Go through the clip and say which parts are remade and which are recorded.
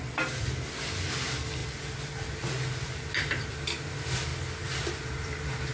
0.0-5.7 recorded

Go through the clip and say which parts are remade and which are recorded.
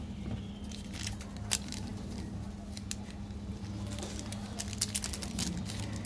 0.0-6.1 recorded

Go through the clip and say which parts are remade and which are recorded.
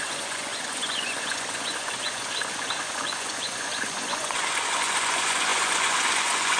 0.0-6.6 remade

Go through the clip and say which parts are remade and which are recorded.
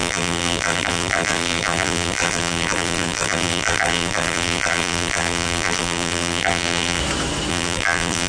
0.0-7.0 remade; 7.0-7.5 recorded; 7.5-8.3 remade